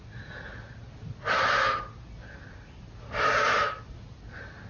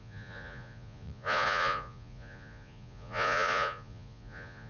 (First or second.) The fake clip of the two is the second